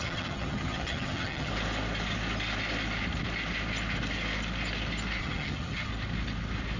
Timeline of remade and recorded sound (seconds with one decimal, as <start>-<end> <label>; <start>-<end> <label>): 0.0-1.5 remade; 1.5-5.2 recorded; 5.2-5.9 remade; 5.9-6.8 recorded